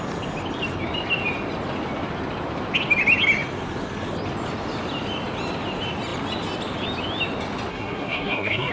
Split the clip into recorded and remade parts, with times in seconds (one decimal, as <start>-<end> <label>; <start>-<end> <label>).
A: 0.0-7.7 recorded; 7.7-8.7 remade